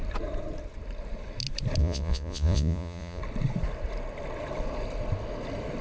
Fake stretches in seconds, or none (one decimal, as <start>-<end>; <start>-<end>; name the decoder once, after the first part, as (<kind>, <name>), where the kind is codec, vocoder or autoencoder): 1.8-3.2 (vocoder, Vocos)